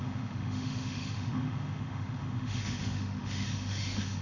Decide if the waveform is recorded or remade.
remade